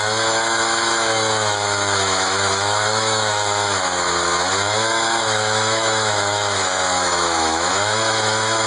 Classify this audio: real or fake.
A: fake